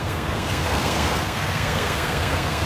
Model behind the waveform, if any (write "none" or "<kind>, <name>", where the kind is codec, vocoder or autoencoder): codec, SNAC